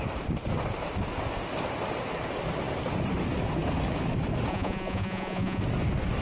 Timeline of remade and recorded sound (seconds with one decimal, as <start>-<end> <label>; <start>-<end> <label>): 0.0-4.5 recorded; 4.5-5.6 remade; 5.6-6.2 recorded